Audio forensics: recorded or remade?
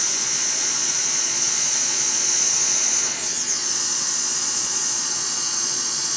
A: remade